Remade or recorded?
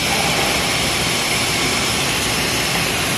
recorded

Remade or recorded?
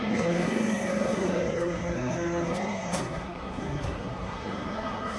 remade